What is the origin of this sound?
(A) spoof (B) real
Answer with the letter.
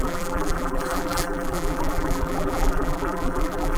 A